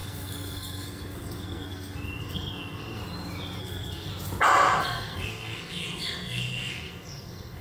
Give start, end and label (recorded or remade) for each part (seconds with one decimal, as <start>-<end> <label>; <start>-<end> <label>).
0.0-3.0 remade; 3.0-3.6 recorded; 3.6-4.1 remade; 4.1-4.8 recorded; 4.8-7.6 remade